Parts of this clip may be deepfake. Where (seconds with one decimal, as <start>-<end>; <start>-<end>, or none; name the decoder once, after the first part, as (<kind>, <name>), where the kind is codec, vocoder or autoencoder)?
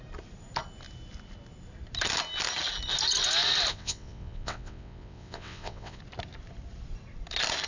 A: 3.7-6.0 (vocoder, WaveNeXt)